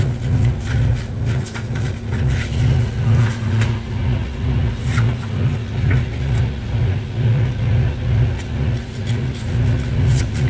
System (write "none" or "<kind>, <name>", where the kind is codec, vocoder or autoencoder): vocoder, Vocos